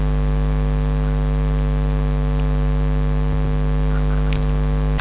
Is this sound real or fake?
real